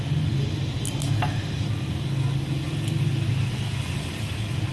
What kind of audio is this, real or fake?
real